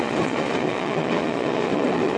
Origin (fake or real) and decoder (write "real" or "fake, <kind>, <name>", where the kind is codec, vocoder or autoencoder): fake, vocoder, Vocos